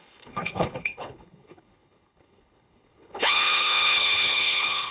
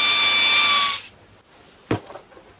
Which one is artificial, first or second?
first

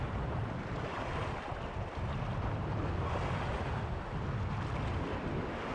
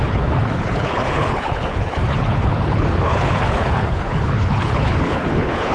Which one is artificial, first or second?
second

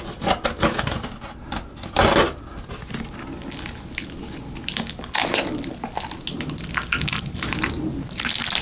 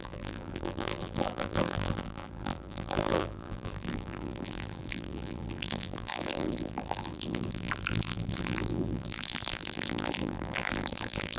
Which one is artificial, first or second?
second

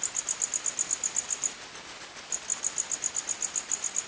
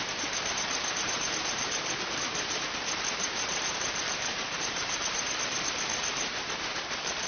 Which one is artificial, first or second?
second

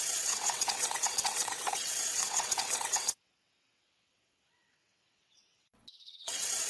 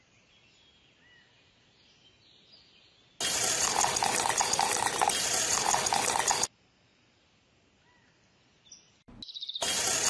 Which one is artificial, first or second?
first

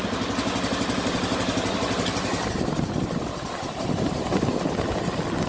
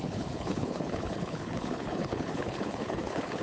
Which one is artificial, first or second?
second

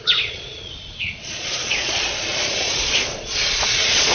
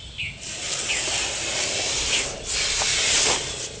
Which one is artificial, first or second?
first